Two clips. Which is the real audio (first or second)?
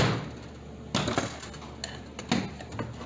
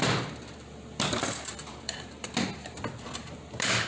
first